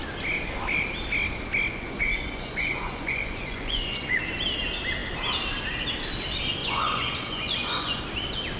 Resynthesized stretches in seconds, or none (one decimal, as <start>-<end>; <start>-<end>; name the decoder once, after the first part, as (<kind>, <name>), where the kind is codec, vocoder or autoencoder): 1.7-4.2 (vocoder, Vocos); 6.6-8.0